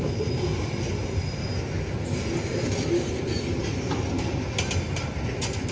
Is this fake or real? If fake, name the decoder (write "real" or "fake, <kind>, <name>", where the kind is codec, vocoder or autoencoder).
real